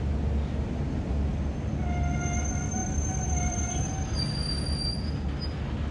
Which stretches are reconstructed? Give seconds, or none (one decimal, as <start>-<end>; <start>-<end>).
2.8-4.5